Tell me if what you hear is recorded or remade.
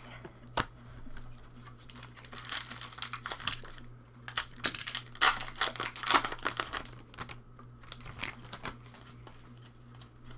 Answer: recorded